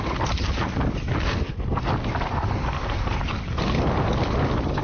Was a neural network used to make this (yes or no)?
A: no